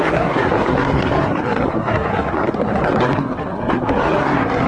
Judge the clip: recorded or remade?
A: remade